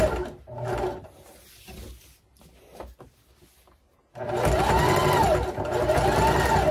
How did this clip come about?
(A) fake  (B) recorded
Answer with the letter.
B